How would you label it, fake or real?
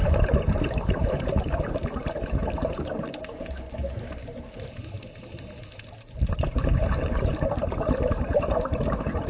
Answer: fake